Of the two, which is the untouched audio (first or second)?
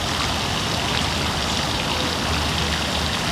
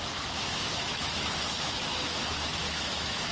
first